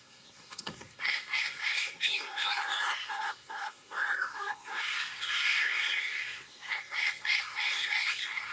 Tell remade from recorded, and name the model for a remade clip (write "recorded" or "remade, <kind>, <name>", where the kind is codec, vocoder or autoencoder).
remade, codec, SNAC